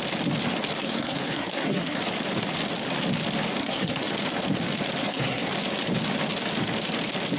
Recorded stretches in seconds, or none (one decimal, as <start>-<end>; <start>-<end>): 0.0-0.8; 2.0-3.6; 4.1-5.0; 5.5-7.4